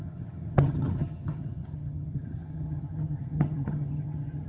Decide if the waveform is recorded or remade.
remade